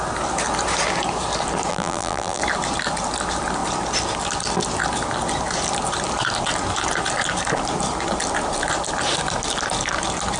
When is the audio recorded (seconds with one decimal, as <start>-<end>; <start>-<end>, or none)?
0.0-1.7; 2.4-10.4

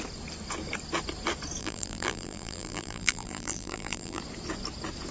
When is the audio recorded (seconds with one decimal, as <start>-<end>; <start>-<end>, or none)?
0.0-1.6; 4.2-5.1